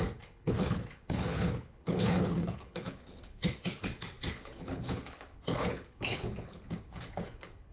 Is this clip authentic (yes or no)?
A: no